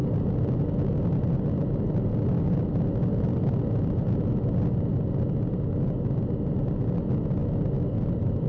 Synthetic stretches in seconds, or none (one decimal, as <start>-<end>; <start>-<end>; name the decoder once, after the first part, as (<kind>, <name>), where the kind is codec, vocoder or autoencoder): none